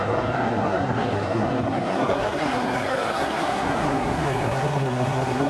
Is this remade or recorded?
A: remade